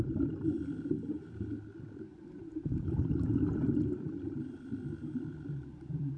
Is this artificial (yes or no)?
yes